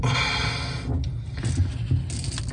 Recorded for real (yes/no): yes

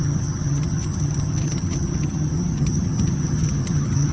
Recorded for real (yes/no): no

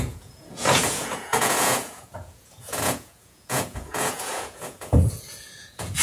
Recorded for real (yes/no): no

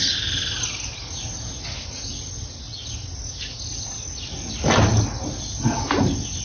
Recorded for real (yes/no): yes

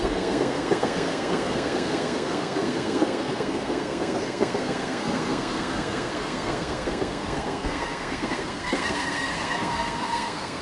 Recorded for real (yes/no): no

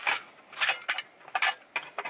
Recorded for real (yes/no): yes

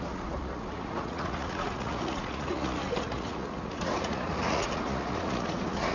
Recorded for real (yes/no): no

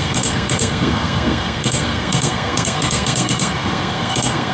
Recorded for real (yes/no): no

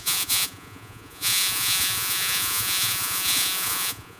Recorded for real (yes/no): no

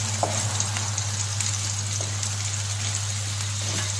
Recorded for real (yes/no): yes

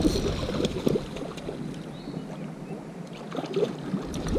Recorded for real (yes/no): yes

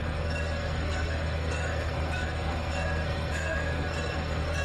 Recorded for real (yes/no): no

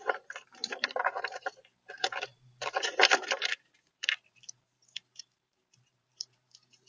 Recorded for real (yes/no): no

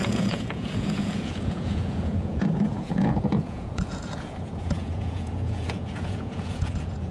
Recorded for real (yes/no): no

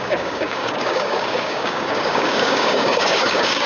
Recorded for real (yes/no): no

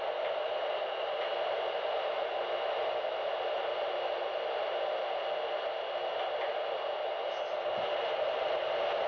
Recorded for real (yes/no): yes